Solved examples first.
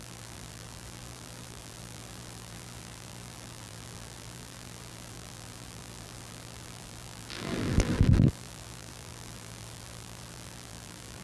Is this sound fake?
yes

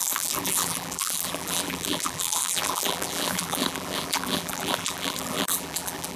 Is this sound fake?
yes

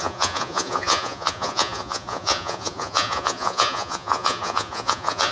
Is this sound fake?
yes